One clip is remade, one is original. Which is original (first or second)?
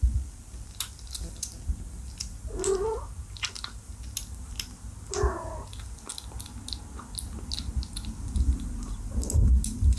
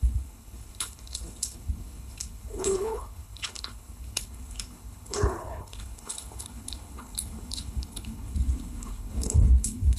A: first